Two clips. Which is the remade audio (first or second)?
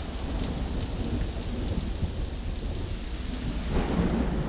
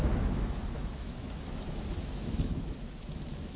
second